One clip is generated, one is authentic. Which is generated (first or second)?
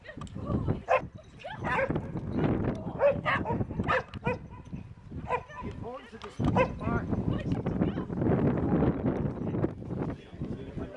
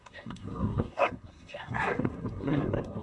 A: second